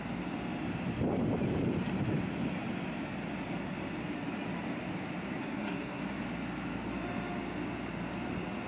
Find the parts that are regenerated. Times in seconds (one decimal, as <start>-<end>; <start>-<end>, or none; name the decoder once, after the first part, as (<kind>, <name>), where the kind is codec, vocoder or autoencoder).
5.4-6.0 (codec, SNAC)